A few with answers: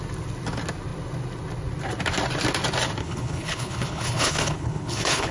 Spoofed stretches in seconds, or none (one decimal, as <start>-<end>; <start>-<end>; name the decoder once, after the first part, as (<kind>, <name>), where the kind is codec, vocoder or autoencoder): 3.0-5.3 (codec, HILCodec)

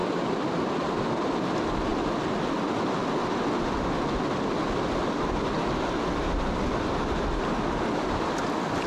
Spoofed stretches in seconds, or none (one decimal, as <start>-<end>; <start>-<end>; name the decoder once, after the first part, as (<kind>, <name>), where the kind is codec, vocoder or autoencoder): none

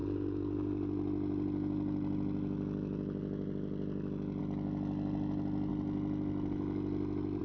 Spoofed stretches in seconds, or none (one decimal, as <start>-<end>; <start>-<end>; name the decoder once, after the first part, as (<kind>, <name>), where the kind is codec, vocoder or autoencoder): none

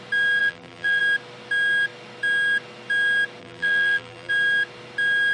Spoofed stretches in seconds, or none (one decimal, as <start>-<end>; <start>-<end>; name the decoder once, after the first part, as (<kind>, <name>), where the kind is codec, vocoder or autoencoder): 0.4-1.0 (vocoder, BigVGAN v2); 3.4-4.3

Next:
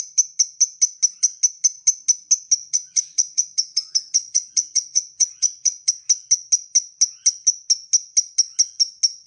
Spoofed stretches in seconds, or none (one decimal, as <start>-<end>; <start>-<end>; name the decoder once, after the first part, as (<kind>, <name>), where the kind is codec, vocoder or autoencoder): 2.6-5.9 (vocoder, Vocos)

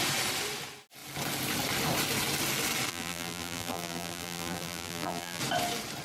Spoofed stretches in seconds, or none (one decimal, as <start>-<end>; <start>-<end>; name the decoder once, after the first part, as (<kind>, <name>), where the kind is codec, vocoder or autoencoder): 2.9-5.4 (vocoder, BigVGAN v2)

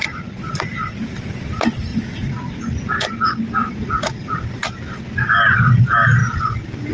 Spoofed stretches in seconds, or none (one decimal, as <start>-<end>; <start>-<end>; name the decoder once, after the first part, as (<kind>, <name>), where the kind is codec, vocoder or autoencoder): 1.9-2.6 (vocoder, Vocos); 3.6-4.4